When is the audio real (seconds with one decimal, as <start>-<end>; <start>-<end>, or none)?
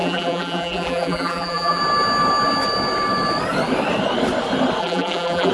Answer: 1.8-4.8